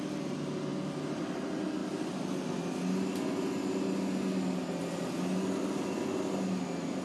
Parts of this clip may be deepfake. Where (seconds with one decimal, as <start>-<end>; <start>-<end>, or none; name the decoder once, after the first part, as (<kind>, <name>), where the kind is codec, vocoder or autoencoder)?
none